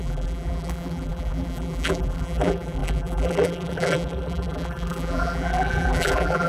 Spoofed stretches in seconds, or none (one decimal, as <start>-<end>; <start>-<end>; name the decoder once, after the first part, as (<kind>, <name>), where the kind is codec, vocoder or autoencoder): 0.0-6.5 (vocoder, BigVGAN v2)